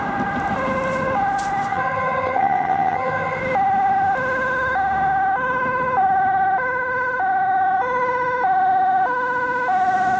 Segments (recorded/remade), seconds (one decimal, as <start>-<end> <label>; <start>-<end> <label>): 0.0-1.7 recorded; 1.7-3.4 remade; 3.4-10.2 recorded